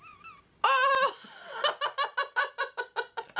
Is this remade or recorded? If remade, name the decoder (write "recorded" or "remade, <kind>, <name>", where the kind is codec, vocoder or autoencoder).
recorded